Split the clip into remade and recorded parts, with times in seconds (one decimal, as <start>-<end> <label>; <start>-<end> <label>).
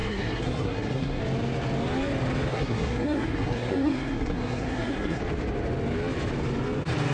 0.0-1.2 remade; 1.2-2.5 recorded; 2.5-5.2 remade; 5.2-7.1 recorded